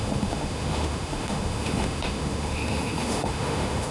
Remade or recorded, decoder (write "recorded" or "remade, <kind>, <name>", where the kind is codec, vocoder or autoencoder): remade, autoencoder, DAC-VAE